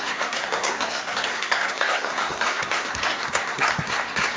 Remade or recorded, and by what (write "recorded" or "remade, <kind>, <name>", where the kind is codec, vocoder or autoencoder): remade, codec, SNAC